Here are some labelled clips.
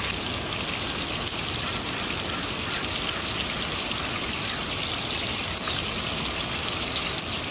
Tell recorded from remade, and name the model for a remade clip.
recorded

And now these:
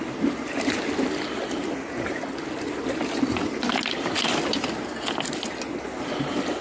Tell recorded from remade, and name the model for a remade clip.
recorded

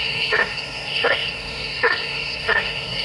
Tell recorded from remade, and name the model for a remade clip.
remade, codec, SNAC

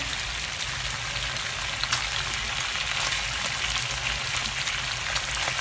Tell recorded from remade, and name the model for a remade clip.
recorded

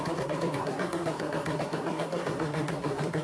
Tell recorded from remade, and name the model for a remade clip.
remade, codec, SNAC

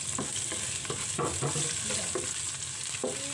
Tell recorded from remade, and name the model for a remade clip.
recorded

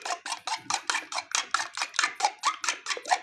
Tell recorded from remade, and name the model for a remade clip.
recorded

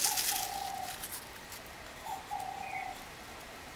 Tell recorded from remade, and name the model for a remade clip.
recorded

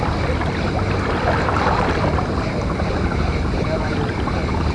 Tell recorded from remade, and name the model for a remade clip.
recorded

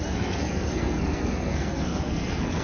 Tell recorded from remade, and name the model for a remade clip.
remade, codec, SNAC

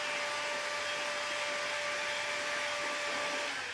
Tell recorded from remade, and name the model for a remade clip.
recorded